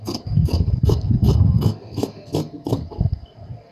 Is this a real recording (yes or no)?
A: no